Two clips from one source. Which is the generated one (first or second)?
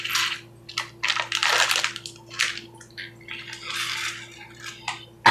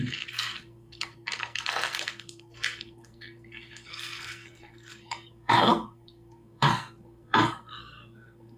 second